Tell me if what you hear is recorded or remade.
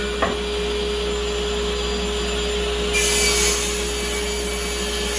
recorded